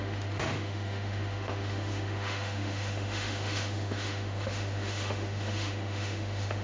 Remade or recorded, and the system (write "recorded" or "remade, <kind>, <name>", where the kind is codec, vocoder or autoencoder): remade, autoencoder, DAC-VAE